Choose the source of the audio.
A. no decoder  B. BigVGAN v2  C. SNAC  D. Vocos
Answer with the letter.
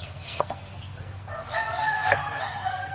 C